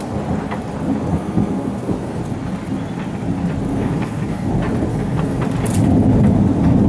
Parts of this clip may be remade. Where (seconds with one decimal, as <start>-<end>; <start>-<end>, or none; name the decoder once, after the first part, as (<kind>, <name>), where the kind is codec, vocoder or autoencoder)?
1.1-2.2 (codec, SNAC); 3.7-4.5; 4.9-5.4